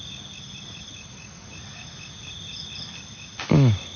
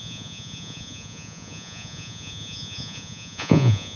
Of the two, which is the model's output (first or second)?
second